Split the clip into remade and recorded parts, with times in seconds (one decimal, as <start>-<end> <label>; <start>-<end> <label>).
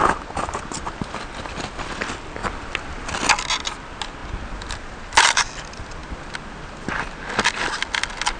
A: 0.0-8.4 recorded